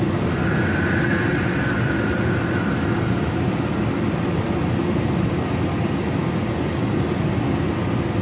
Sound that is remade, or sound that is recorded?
recorded